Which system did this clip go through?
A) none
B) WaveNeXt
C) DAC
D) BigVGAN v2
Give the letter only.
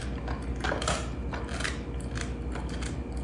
A